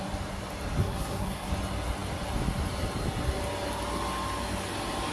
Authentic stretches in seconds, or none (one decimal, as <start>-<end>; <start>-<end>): 0.0-0.8; 1.5-5.1